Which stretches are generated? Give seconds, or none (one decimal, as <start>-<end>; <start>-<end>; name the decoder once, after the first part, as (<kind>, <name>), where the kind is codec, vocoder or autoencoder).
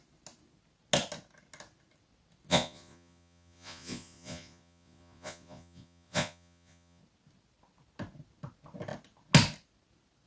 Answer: 2.5-7.0 (vocoder, Vocos)